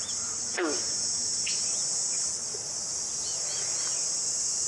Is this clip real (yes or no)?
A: yes